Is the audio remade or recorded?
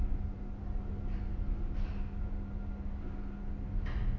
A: recorded